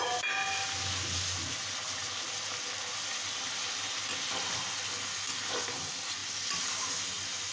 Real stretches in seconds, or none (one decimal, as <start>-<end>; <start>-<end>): 0.0-7.5